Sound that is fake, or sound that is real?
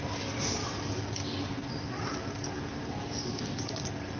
real